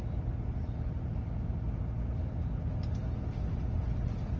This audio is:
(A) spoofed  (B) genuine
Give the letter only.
B